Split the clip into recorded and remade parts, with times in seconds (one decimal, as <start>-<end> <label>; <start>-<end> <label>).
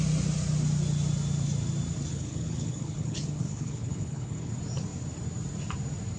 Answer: 0.0-2.1 recorded; 2.1-4.5 remade; 4.5-6.2 recorded